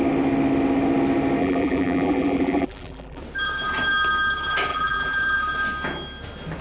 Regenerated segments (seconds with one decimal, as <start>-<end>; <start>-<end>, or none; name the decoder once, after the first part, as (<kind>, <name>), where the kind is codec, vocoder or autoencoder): 1.4-3.2 (vocoder, BigVGAN v2); 4.7-5.2